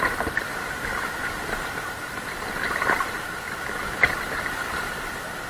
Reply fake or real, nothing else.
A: real